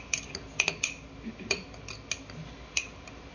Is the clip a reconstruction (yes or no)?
no